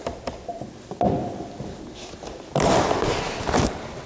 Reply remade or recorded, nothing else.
recorded